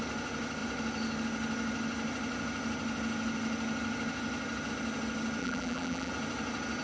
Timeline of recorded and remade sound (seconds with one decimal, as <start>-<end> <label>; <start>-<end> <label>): 0.0-5.4 recorded; 5.4-6.1 remade; 6.1-6.8 recorded